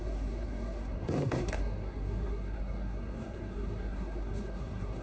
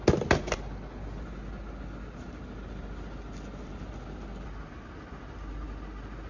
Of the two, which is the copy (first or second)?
first